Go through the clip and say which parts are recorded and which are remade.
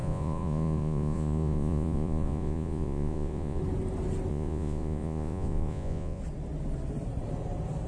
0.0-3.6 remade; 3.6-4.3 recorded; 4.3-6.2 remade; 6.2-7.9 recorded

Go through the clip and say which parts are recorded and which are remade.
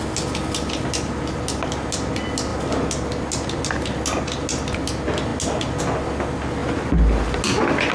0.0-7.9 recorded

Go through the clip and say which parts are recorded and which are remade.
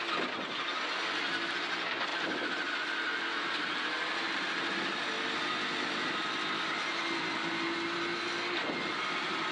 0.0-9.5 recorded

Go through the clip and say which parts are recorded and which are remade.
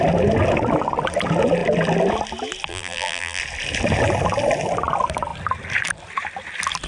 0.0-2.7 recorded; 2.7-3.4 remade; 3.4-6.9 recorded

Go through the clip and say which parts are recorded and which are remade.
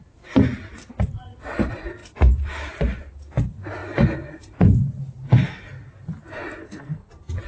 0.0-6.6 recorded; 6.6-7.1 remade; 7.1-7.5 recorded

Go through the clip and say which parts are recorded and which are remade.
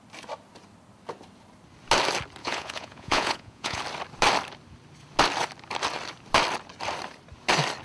0.0-2.4 recorded; 2.4-3.8 remade; 3.8-7.8 recorded